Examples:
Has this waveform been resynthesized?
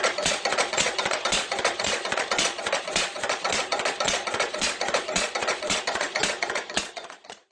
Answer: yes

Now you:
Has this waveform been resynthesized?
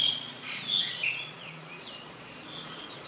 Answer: yes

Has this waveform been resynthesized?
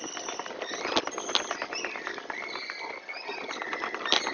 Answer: no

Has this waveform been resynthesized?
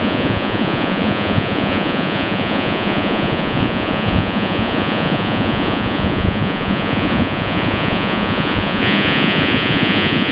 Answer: yes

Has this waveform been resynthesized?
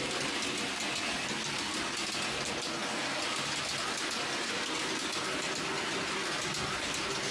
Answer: no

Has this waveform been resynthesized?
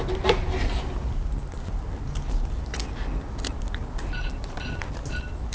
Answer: no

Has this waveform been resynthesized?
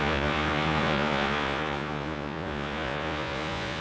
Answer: yes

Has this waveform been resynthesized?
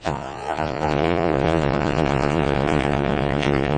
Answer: yes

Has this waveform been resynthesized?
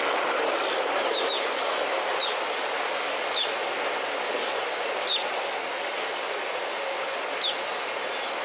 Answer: no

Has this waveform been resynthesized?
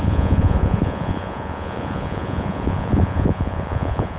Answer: yes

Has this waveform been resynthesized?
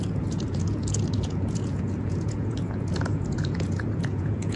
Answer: yes